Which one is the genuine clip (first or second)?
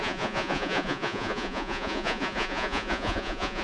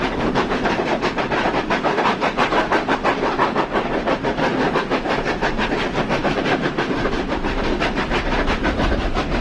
second